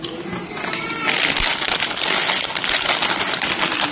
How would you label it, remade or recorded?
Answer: recorded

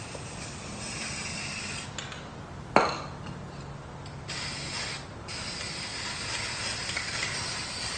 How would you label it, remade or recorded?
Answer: recorded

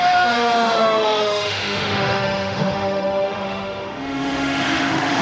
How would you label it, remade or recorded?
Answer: remade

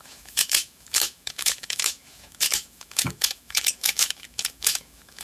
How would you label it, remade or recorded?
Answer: remade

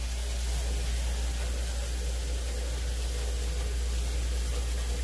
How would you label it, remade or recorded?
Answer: recorded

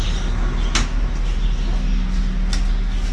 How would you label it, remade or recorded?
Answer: recorded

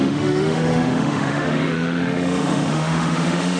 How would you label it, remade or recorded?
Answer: remade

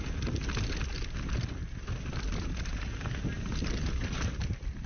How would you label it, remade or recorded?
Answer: recorded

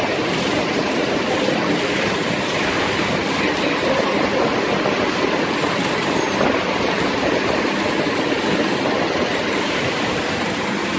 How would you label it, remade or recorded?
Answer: recorded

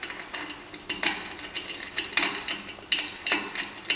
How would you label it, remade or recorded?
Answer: recorded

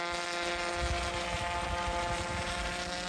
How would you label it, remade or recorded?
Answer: recorded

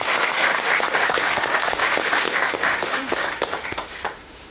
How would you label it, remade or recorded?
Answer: remade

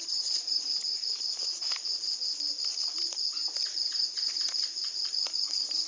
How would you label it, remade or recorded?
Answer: recorded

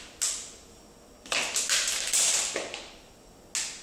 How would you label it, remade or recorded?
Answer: recorded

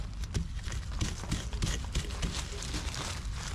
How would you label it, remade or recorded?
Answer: recorded